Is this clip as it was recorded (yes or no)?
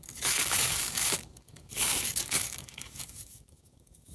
no